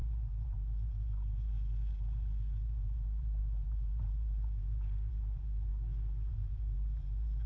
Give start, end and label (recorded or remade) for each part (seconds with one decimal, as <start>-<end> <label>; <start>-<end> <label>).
0.0-5.7 remade; 5.7-6.3 recorded; 6.3-7.5 remade